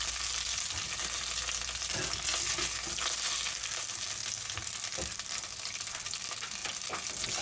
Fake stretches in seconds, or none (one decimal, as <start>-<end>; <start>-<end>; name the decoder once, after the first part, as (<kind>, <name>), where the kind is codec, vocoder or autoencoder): none